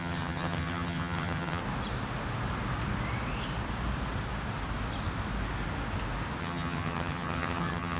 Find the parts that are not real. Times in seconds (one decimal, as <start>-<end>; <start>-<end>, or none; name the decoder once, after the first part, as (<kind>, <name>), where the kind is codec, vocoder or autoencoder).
0.0-1.6 (vocoder, HiFi-GAN); 6.4-8.0